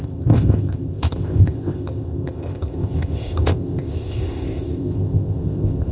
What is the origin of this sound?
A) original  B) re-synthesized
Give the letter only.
B